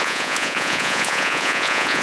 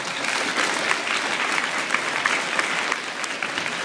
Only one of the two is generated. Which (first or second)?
first